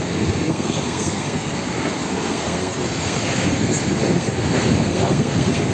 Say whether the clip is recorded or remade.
remade